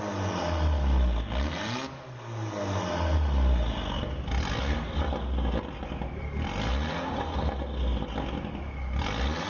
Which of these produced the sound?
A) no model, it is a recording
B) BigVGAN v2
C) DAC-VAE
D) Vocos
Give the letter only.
A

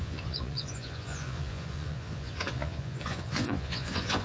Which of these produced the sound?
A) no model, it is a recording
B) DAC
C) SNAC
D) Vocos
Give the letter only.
D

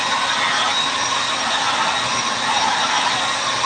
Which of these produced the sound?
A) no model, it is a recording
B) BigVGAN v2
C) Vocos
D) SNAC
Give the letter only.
A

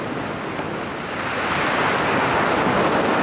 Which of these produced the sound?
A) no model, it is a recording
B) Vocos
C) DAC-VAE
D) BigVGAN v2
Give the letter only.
A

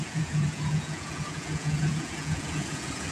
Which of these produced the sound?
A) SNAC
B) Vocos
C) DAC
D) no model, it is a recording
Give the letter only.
B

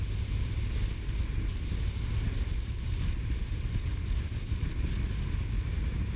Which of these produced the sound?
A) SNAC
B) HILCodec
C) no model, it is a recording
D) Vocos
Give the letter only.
C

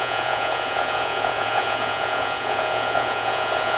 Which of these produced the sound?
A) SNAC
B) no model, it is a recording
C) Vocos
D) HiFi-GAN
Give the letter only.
C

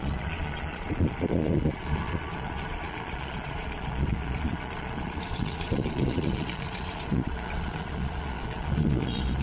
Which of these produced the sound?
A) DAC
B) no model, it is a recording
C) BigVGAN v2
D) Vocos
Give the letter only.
D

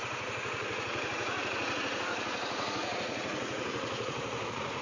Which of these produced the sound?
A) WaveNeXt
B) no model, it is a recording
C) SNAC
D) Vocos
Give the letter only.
D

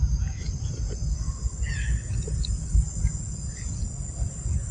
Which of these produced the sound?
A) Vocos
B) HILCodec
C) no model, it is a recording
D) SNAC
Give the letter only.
C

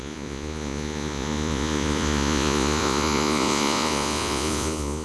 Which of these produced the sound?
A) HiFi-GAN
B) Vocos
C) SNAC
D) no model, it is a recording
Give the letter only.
B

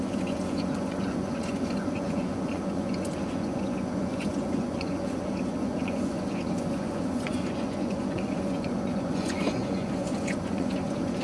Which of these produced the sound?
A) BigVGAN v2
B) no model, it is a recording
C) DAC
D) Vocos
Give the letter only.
D